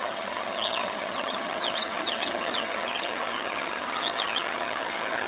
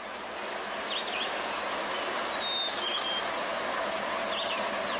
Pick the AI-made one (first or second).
first